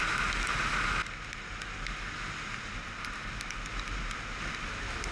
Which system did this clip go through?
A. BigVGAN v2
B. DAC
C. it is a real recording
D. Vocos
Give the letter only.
C